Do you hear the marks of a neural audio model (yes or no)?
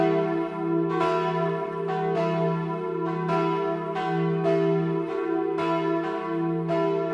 no